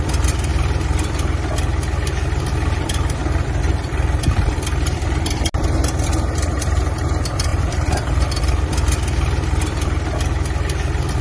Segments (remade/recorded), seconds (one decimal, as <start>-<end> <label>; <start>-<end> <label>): 0.0-3.2 recorded; 3.2-4.3 remade; 4.3-7.5 recorded; 7.5-8.4 remade; 8.4-11.2 recorded